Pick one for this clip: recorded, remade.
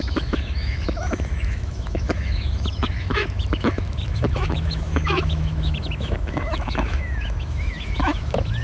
remade